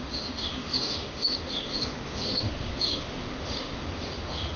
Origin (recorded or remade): remade